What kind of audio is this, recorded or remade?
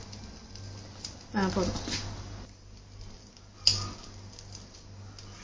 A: recorded